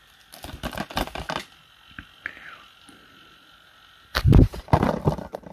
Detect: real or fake real